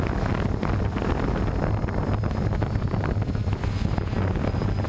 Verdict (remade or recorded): recorded